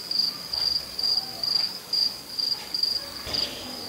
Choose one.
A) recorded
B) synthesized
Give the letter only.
B